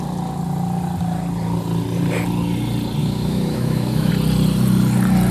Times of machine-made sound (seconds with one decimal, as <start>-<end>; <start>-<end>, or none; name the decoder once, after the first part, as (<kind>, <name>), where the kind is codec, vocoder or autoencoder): 3.0-4.1 (autoencoder, DAC-VAE)